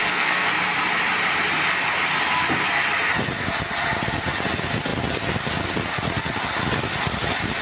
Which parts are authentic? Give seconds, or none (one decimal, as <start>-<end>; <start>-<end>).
0.5-7.6